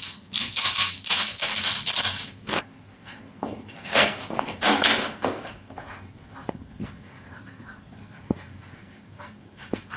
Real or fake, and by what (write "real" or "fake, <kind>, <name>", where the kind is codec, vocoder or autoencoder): fake, codec, SNAC